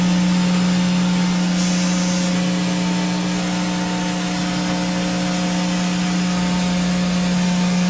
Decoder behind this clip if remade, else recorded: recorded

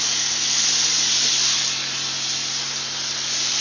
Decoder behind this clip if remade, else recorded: recorded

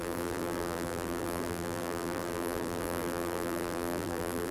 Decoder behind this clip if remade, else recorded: remade, vocoder, BigVGAN v2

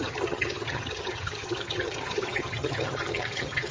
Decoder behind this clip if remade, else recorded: remade, vocoder, HiFi-GAN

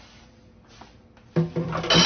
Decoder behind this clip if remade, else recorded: recorded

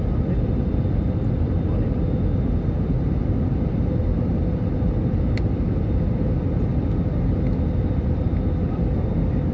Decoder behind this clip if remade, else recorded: recorded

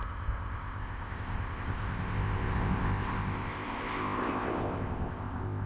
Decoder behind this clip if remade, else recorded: remade, codec, ZipCodec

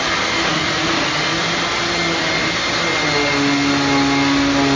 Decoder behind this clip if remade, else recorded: recorded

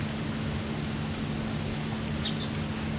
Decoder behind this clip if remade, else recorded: recorded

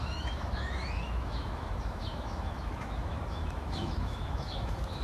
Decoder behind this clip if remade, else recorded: remade, autoencoder, DAC-VAE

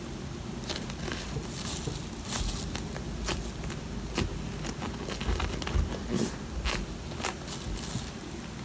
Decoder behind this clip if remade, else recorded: recorded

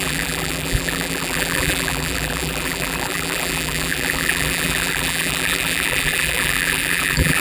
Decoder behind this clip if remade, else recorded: remade, vocoder, BigVGAN v2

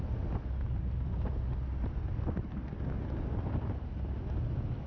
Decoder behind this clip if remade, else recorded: recorded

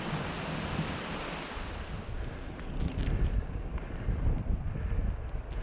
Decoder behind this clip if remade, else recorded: recorded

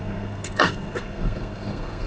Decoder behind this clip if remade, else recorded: remade, codec, SNAC